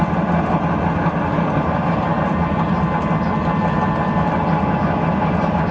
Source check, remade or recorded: recorded